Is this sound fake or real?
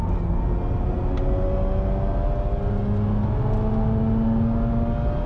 real